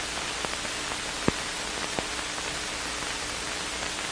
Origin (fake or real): real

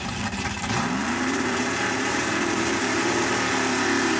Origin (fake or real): fake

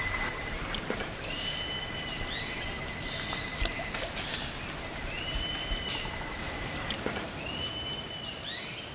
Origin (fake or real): real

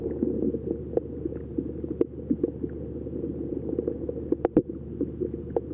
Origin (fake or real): real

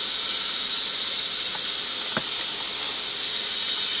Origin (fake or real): real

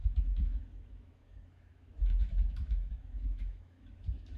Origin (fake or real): fake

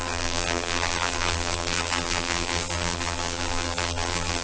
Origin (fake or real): fake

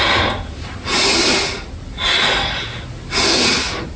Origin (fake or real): real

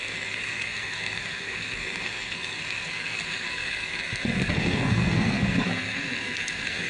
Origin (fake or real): fake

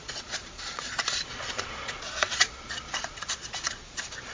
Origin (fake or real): fake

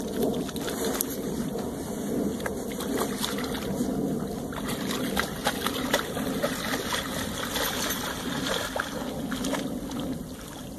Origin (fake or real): real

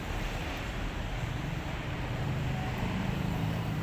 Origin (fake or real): fake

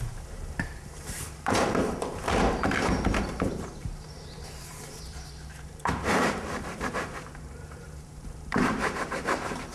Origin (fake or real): fake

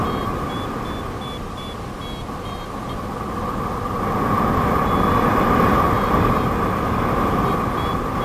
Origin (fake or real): real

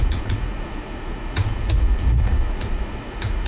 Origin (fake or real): fake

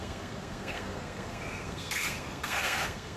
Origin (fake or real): fake